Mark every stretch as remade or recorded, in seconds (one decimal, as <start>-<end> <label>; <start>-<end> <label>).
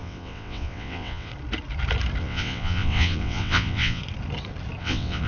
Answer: 0.0-1.3 remade; 1.3-2.2 recorded; 2.2-4.0 remade; 4.0-4.8 recorded; 4.8-5.3 remade